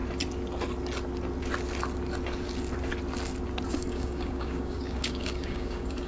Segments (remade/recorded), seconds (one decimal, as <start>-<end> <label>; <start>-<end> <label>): 0.0-3.7 recorded; 3.7-6.1 remade